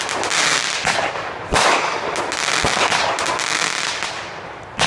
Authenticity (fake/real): real